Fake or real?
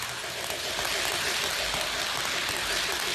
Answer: real